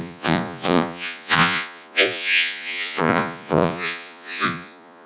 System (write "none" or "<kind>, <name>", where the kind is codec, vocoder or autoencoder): vocoder, Vocos